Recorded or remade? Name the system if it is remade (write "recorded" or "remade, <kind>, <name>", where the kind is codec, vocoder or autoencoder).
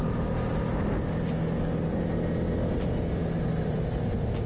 recorded